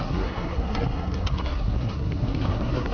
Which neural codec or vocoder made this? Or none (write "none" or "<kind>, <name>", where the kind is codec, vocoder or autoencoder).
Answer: codec, SNAC